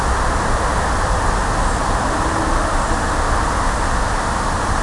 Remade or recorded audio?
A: recorded